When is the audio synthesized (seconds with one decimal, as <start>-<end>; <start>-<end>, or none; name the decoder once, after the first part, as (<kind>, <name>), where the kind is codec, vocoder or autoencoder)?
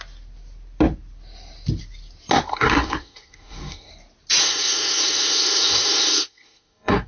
2.5-3.9 (codec, SNAC); 4.4-7.1